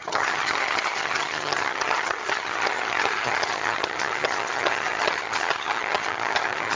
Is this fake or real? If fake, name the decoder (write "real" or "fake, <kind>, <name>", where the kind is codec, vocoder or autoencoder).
fake, vocoder, HiFi-GAN